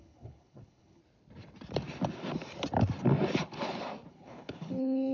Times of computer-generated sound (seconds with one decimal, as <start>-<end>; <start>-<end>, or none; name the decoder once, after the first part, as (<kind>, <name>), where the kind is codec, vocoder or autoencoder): 0.0-1.0 (codec, HILCodec); 4.1-5.1